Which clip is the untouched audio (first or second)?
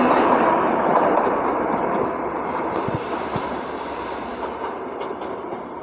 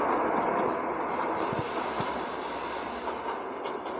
second